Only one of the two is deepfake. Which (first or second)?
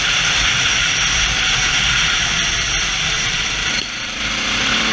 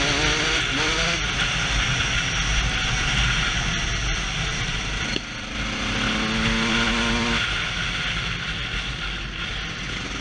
first